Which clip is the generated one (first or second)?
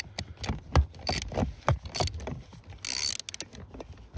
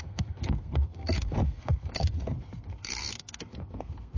second